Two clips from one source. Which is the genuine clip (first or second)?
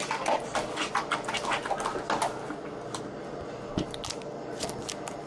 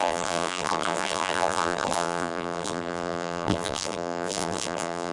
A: first